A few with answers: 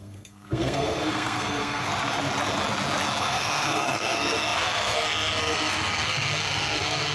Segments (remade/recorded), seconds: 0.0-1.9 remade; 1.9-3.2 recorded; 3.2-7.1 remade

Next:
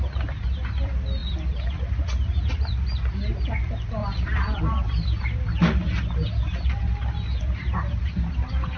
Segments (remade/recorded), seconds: 0.0-4.0 recorded; 4.0-5.8 remade; 5.8-8.8 recorded

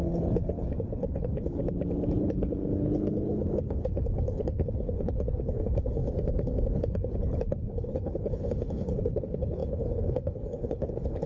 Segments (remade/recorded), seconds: 0.0-1.6 remade; 1.6-2.2 recorded; 2.2-6.0 remade; 6.0-6.7 recorded; 6.7-11.3 remade

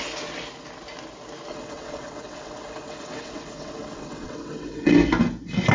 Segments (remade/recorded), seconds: 0.0-1.5 recorded; 1.5-4.9 remade; 4.9-5.7 recorded

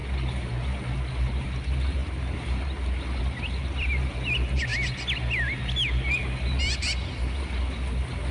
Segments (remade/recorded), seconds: 0.0-8.3 recorded